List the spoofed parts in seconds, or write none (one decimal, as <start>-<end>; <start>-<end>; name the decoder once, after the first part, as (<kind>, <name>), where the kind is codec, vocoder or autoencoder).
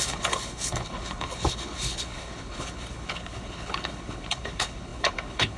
0.0-5.6 (codec, HILCodec)